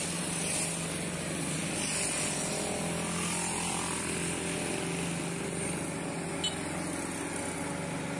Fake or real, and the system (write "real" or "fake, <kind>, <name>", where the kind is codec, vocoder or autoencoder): real